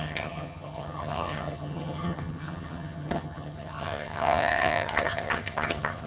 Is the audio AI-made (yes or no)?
yes